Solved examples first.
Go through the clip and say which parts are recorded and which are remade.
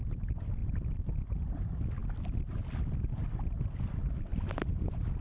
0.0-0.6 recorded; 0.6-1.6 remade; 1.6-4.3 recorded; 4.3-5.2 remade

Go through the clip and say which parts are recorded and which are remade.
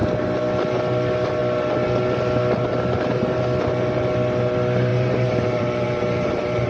0.0-4.9 recorded; 4.9-6.7 remade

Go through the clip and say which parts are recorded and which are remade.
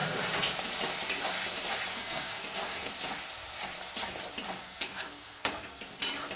0.0-1.9 recorded; 1.9-2.9 remade; 2.9-4.6 recorded; 4.6-5.9 remade; 5.9-6.4 recorded